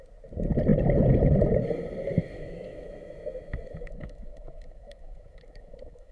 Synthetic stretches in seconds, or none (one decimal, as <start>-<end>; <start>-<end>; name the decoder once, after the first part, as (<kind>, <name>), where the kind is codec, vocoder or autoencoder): 2.2-6.1 (autoencoder, DAC-VAE)